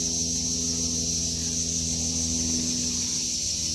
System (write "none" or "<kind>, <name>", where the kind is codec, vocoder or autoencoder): none